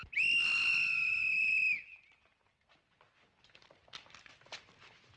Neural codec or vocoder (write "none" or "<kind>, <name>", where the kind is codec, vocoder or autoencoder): vocoder, BigVGAN v2